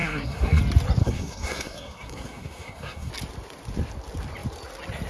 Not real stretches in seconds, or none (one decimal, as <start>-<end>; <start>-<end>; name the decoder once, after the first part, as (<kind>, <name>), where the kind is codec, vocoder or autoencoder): 0.0-0.6 (codec, SNAC); 1.0-3.1